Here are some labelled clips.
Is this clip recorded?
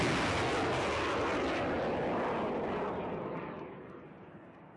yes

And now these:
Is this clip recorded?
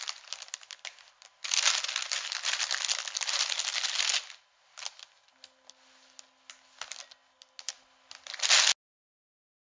yes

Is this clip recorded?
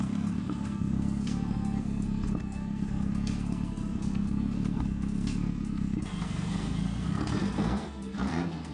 no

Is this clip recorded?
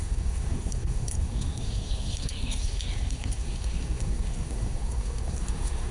no